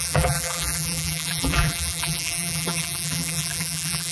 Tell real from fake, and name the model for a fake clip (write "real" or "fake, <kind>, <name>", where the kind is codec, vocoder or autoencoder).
fake, vocoder, BigVGAN v2